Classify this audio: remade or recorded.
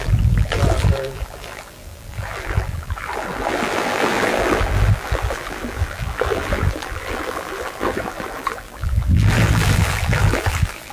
remade